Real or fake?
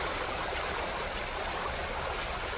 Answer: real